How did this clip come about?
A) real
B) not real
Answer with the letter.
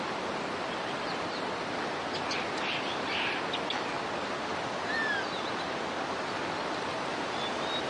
A